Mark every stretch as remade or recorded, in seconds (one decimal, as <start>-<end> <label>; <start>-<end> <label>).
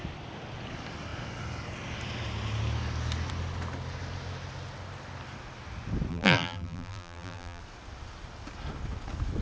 0.0-6.1 recorded; 6.1-7.6 remade; 7.6-9.4 recorded